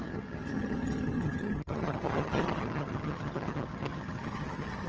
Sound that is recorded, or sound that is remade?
remade